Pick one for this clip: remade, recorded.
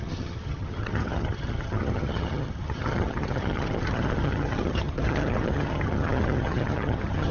remade